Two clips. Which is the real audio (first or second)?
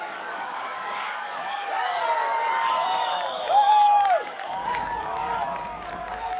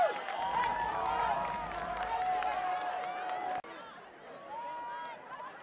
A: second